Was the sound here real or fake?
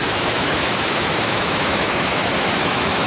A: fake